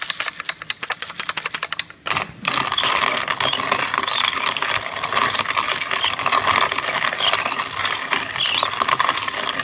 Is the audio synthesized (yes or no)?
no